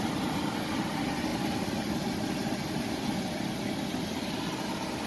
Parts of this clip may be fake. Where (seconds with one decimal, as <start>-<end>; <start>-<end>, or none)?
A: none